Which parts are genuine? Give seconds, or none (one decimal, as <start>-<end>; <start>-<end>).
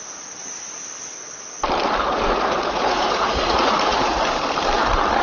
0.4-2.0; 4.4-5.2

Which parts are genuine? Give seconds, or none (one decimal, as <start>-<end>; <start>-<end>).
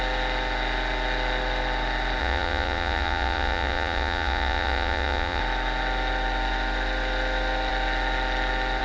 0.0-2.2; 5.4-8.8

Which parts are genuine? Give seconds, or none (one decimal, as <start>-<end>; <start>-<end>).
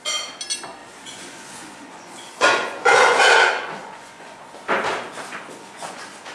0.0-0.8; 4.5-5.3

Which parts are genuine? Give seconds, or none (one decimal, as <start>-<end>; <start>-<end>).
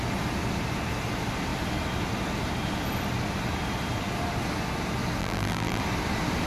0.0-5.2; 5.8-6.5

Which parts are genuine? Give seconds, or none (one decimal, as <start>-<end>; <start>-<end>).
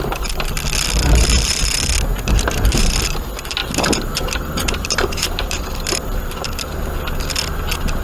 0.0-2.1; 2.8-3.6; 6.6-8.0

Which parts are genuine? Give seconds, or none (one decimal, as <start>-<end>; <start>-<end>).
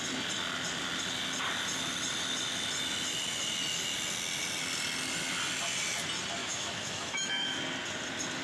0.0-6.4; 7.6-8.4